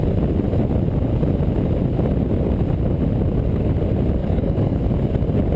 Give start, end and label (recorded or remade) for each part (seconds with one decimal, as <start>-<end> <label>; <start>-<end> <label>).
0.0-4.2 recorded; 4.2-4.8 remade; 4.8-5.6 recorded